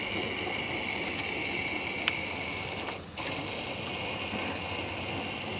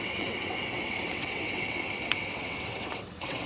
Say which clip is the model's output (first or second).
second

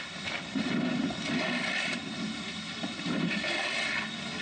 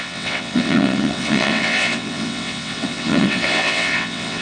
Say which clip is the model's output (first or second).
second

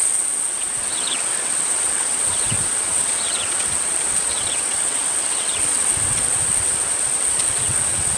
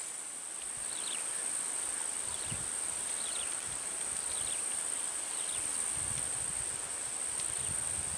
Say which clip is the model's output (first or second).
first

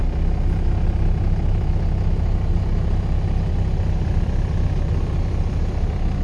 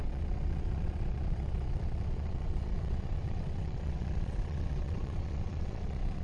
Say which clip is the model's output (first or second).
second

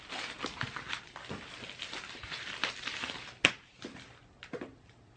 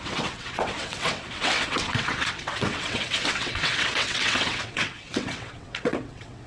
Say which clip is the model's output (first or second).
second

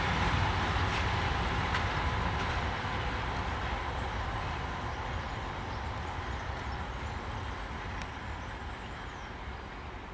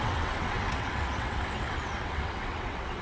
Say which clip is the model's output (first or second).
second